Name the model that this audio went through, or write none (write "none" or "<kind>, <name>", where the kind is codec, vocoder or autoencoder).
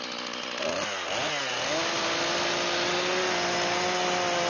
none